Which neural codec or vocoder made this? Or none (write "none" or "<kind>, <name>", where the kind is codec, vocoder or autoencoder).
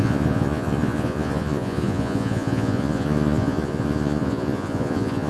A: vocoder, Vocos